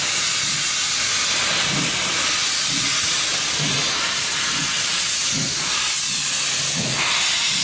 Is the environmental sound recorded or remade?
recorded